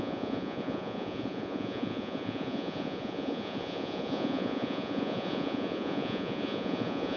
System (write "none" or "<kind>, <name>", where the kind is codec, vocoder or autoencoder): vocoder, Vocos